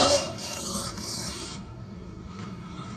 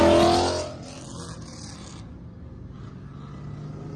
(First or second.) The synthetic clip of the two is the first